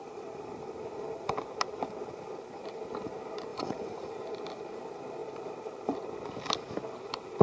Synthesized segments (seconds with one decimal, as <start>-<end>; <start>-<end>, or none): 3.5-4.1